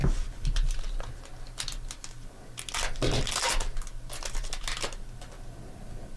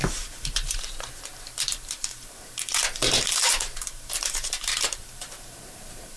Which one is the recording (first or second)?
first